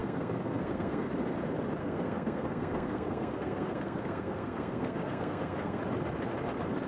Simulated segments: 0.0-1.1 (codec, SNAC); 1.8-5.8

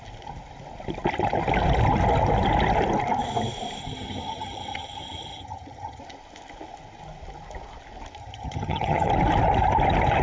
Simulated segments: 3.8-6.0 (vocoder, HiFi-GAN); 8.2-9.1

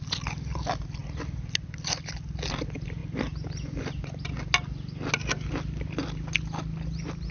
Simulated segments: none

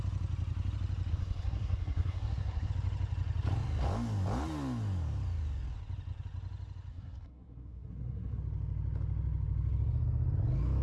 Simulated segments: 1.1-2.7 (codec, SNAC); 6.9-8.4